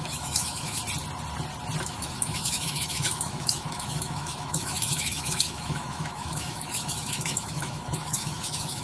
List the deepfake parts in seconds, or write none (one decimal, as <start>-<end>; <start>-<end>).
0.0-0.8; 1.8-8.8